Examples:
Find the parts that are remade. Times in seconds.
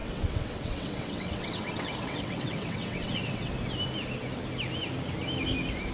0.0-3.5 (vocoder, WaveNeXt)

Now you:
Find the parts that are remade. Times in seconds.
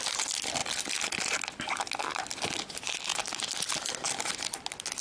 none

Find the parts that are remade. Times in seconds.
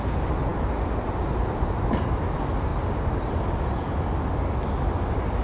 none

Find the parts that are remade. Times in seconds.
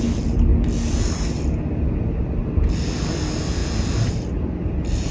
none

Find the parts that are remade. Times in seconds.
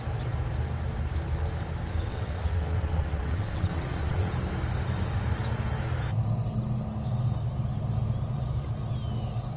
2.1-4.3 (vocoder, WaveNeXt)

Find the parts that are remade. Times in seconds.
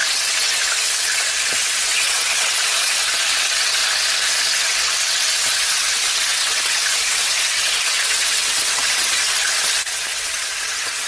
0.0-3.8 (vocoder, WaveNeXt); 4.6-11.1